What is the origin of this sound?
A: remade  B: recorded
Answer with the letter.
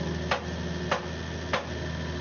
B